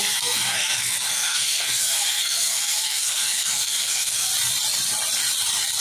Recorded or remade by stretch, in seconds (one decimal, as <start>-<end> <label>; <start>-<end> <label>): 0.0-4.3 remade; 4.3-5.8 recorded